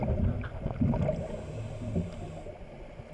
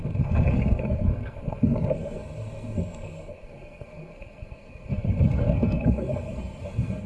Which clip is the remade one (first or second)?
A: second